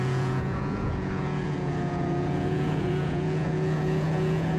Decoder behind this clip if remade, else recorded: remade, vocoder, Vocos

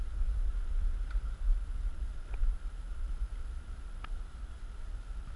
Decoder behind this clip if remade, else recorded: recorded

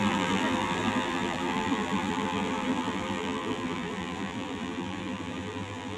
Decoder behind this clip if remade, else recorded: remade, vocoder, BigVGAN v2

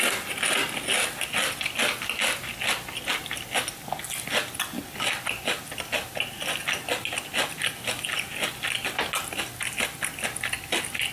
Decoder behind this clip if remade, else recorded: recorded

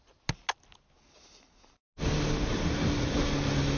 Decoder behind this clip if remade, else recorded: recorded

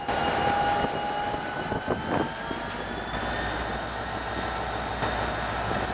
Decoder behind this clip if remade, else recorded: recorded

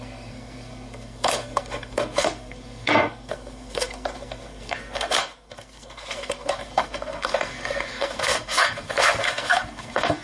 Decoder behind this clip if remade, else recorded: remade, codec, SNAC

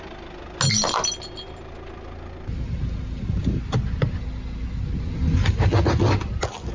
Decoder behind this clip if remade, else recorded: recorded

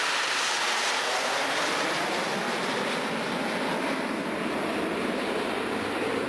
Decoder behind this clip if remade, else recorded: recorded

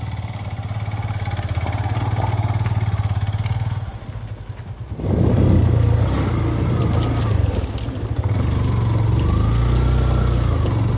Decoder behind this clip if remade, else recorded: recorded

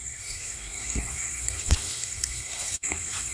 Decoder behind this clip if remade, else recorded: remade, codec, SNAC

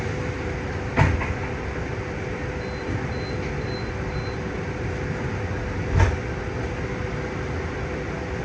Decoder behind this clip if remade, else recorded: recorded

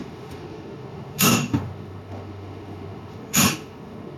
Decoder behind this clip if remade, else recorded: remade, autoencoder, DAC-VAE